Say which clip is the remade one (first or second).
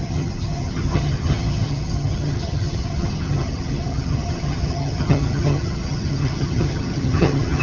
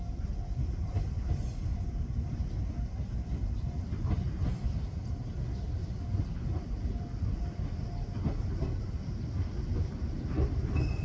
first